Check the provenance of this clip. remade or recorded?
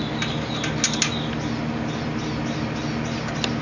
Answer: recorded